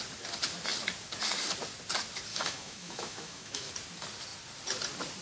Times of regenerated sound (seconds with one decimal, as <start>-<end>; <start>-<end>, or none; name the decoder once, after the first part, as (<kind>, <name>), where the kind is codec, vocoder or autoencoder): 2.3-3.7 (autoencoder, DAC-VAE)